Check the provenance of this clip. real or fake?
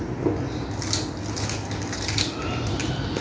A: real